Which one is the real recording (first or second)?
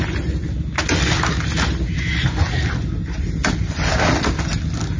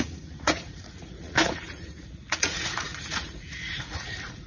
first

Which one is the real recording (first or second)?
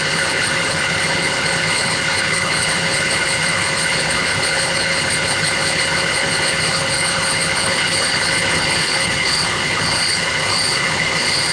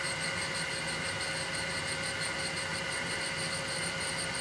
second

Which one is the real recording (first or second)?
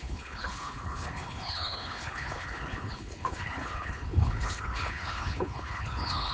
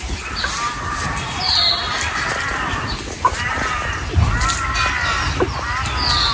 second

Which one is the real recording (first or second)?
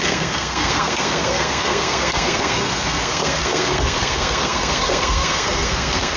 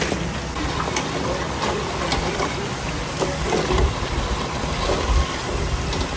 second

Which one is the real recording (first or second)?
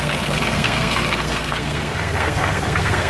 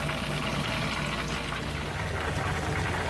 second